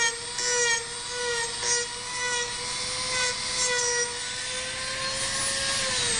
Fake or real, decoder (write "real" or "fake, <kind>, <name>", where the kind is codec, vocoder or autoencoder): real